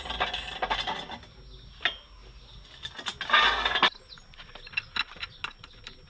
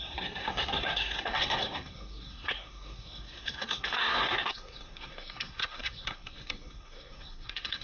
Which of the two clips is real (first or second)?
first